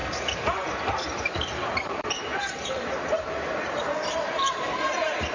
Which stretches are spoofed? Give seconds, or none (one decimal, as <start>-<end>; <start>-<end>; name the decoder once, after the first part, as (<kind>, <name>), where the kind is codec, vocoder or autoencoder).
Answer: 0.8-5.3 (vocoder, BigVGAN v2)